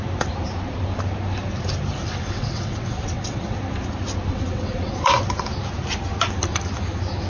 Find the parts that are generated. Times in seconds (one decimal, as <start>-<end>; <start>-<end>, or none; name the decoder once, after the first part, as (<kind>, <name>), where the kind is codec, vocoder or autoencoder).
2.0-3.6 (vocoder, WaveNeXt); 4.3-5.2